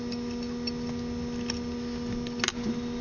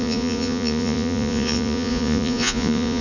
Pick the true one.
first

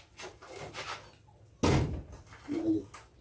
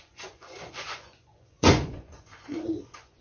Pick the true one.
first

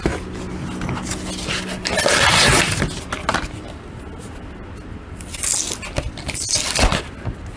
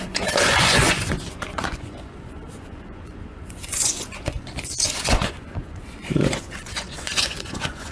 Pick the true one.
first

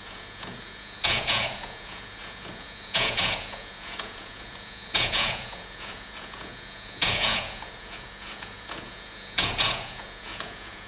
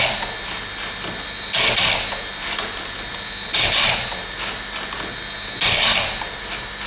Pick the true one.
second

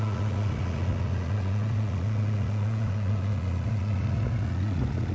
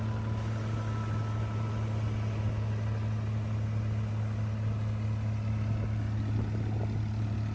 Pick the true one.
second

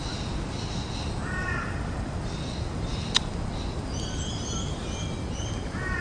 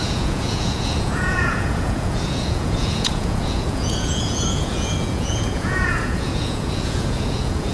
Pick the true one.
first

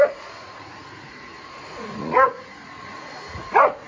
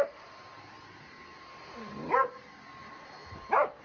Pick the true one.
second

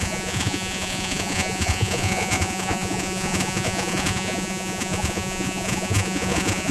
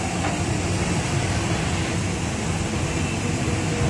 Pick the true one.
second